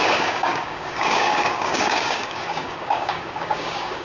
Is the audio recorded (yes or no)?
no